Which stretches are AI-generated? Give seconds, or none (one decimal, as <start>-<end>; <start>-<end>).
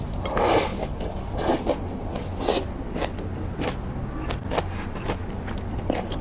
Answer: none